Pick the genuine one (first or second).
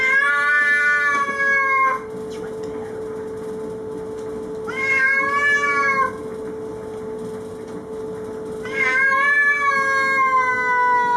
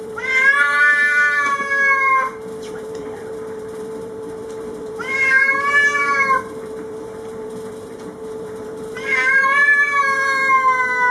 first